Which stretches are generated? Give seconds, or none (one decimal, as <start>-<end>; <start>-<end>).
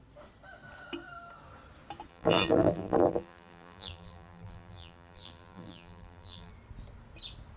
2.1-6.5